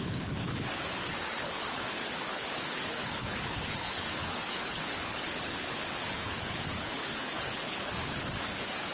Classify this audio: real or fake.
fake